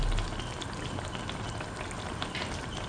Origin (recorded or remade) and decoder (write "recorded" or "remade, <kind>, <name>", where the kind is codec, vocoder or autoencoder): recorded